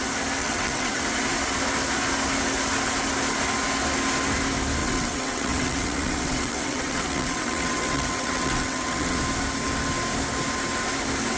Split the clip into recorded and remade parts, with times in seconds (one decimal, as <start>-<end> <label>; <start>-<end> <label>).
0.0-0.4 recorded; 0.4-1.0 remade; 1.0-4.8 recorded; 4.8-9.2 remade; 9.2-11.4 recorded